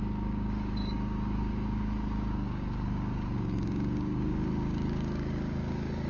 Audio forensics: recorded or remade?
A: remade